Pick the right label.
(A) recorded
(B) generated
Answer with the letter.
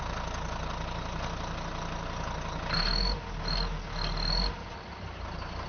A